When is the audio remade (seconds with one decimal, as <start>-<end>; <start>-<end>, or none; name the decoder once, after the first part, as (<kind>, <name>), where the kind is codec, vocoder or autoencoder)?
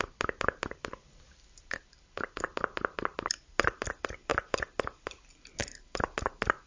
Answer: none